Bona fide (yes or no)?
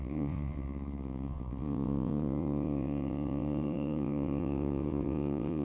no